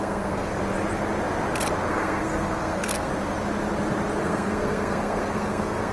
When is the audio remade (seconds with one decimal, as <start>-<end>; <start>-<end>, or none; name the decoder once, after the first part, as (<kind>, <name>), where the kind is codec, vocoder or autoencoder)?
0.0-0.5 (codec, SNAC); 1.9-3.1; 4.2-5.9